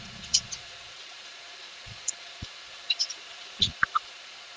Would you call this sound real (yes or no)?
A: no